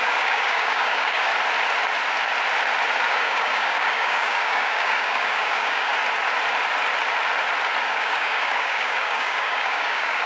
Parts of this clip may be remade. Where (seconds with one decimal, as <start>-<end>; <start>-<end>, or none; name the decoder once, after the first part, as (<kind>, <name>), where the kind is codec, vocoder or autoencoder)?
0.0-1.3 (codec, DAC); 3.1-5.9; 7.8-10.3